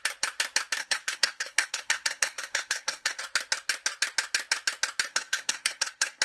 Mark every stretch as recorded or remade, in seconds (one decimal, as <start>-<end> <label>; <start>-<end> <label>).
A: 0.0-0.8 recorded; 0.8-3.2 remade; 3.2-5.1 recorded; 5.1-6.2 remade